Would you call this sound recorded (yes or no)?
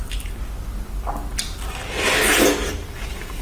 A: yes